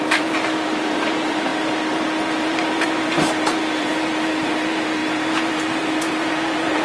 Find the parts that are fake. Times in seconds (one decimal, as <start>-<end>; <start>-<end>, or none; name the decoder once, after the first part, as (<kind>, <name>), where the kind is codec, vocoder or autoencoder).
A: 0.0-6.8 (vocoder, BigVGAN v2)